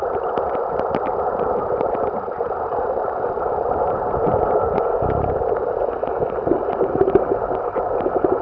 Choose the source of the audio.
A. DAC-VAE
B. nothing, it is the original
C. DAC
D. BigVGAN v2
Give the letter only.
B